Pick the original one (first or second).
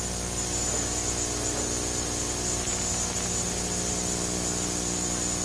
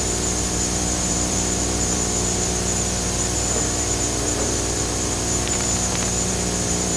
first